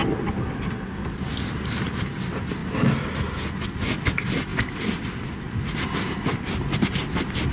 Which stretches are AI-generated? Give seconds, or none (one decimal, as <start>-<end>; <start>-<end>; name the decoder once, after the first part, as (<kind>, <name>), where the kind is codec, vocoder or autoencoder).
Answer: none